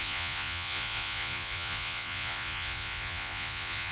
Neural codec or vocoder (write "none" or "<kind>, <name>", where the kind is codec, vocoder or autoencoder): vocoder, Vocos